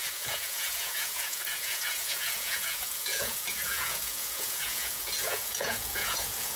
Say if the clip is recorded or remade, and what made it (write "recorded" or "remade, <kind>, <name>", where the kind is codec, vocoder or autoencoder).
remade, vocoder, Vocos